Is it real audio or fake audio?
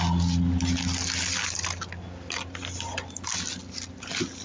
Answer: real